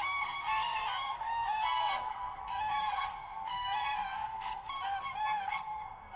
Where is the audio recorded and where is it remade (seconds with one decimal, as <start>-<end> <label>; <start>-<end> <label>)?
0.0-6.2 remade